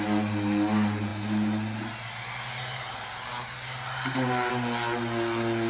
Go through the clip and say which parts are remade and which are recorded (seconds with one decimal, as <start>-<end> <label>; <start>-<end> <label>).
0.0-5.7 recorded